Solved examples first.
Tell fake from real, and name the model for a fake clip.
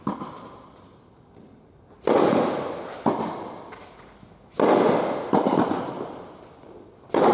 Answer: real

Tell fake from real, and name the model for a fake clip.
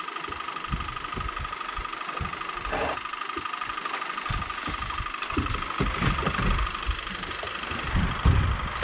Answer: real